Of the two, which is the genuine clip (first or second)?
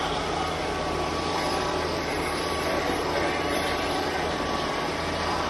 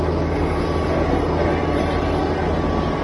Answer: second